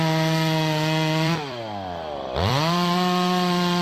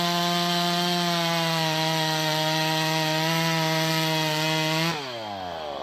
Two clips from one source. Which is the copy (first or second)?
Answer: first